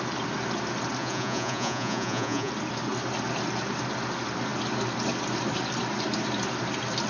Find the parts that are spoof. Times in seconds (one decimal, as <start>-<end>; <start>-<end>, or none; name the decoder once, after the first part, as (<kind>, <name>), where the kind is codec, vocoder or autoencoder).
1.0-2.5 (vocoder, Vocos)